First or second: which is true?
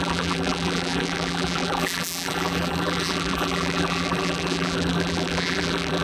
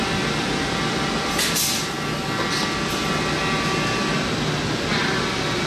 second